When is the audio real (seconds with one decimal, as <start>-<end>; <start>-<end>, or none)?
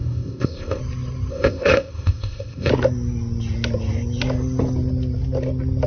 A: 0.8-1.3; 2.7-5.9